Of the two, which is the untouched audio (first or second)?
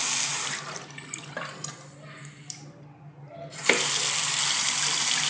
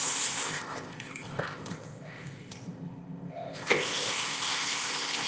first